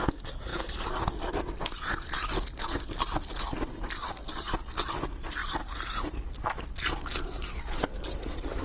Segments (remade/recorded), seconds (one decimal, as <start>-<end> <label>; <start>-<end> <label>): 0.0-8.6 recorded